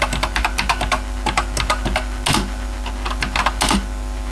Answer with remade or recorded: recorded